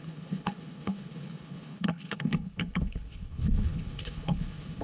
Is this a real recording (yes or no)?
no